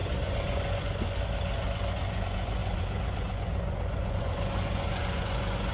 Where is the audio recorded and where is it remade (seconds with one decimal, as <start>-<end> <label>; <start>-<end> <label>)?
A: 0.0-5.7 remade